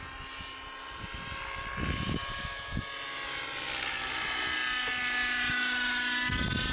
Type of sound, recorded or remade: recorded